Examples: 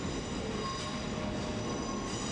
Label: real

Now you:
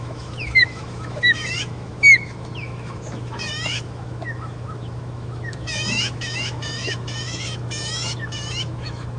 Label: fake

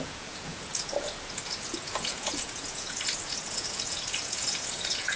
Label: fake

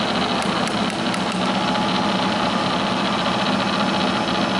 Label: real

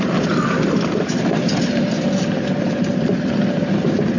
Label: fake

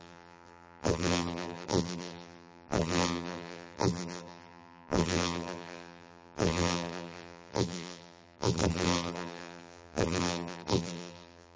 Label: fake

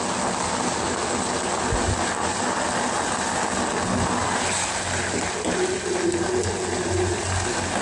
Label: real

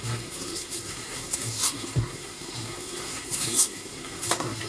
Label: fake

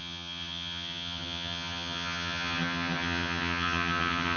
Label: fake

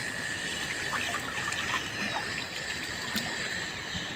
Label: real